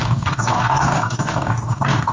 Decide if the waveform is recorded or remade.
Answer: remade